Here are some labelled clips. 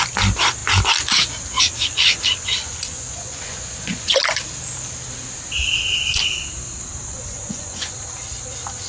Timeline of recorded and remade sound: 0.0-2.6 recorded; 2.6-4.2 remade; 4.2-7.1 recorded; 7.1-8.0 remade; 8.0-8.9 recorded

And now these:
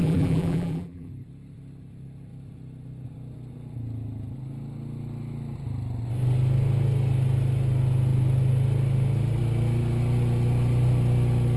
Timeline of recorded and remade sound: 0.0-1.1 remade; 1.1-11.6 recorded

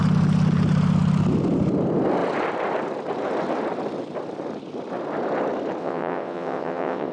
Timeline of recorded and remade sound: 0.0-5.8 recorded; 5.8-7.1 remade

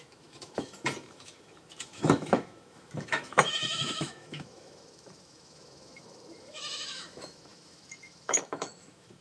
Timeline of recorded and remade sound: 0.0-9.2 remade

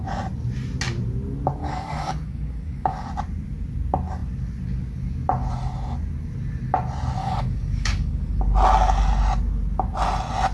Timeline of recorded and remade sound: 0.0-1.6 recorded; 1.6-3.1 remade; 3.1-7.2 recorded; 7.2-8.4 remade; 8.4-10.5 recorded